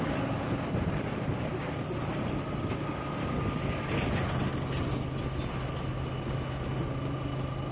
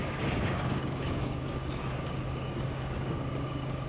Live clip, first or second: first